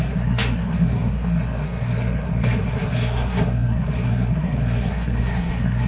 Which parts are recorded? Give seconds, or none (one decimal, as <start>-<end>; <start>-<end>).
none